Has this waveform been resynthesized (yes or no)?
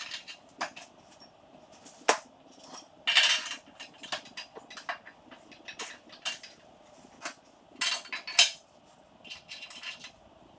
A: no